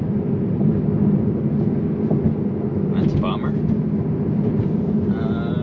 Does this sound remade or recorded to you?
recorded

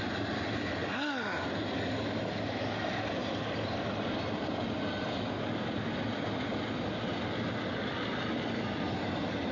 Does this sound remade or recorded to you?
recorded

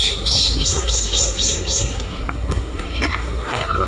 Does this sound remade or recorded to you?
remade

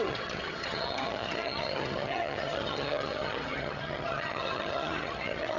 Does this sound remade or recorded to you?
remade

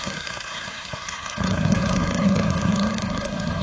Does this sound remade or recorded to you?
remade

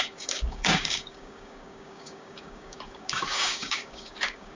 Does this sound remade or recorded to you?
remade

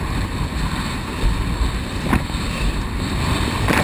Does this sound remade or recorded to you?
remade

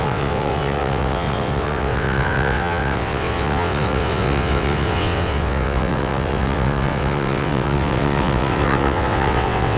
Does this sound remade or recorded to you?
remade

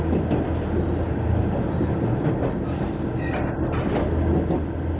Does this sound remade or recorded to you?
recorded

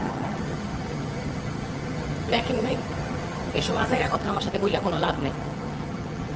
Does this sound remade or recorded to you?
remade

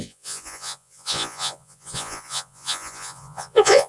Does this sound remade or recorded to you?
remade